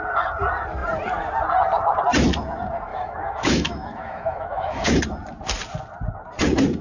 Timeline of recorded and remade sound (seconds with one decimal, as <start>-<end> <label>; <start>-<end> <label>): 0.0-2.9 recorded; 2.9-5.0 remade; 5.0-6.8 recorded